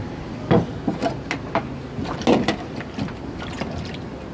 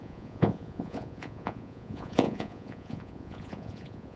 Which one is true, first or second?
first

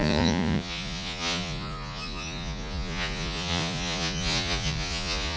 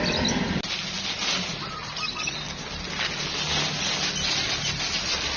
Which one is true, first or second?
second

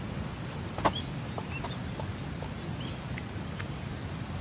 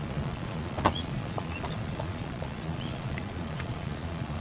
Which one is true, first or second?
first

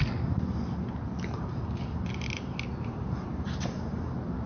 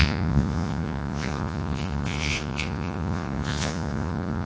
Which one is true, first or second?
first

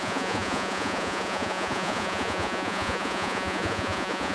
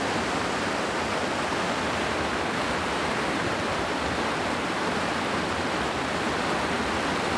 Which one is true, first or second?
second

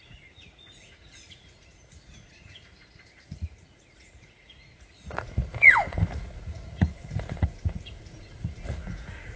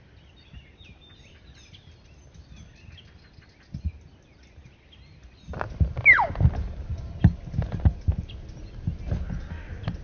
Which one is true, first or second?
second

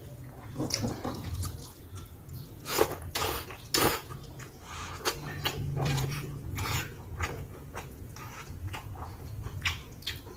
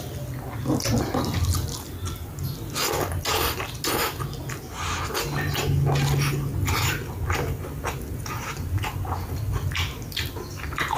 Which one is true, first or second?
second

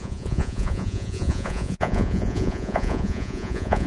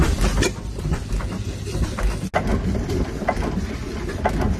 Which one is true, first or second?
second